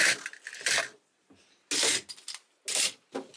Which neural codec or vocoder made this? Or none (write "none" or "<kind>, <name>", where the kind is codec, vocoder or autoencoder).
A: none